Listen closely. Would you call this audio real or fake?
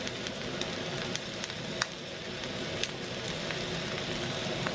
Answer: real